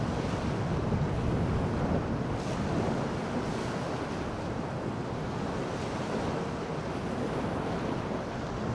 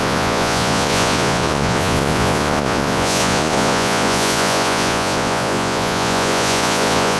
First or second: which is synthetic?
second